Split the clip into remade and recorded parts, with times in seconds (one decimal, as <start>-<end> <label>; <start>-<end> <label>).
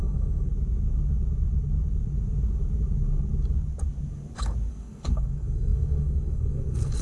0.0-0.5 remade; 0.5-4.7 recorded; 4.7-7.0 remade